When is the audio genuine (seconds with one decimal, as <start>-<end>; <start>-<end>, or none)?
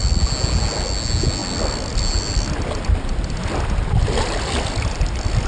0.0-5.5